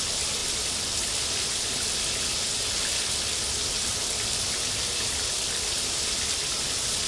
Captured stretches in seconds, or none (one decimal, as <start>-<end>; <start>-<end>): 0.0-7.1